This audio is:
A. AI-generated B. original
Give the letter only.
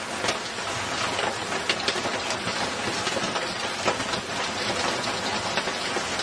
B